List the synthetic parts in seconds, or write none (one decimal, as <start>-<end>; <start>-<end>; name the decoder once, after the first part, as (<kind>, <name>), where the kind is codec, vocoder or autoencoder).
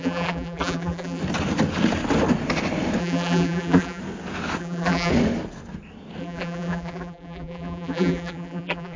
0.0-1.2 (vocoder, BigVGAN v2); 3.0-4.0; 4.6-5.1; 6.2-9.0